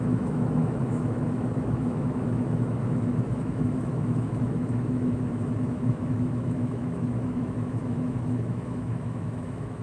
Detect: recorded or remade remade